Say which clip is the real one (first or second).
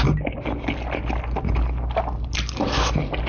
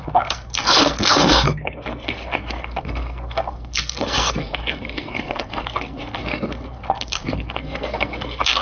first